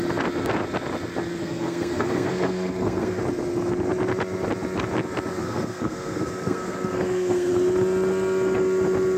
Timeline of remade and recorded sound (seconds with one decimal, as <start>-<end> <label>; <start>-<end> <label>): 0.0-1.4 recorded; 1.4-3.2 remade; 3.2-5.3 recorded; 5.3-7.5 remade; 7.5-9.2 recorded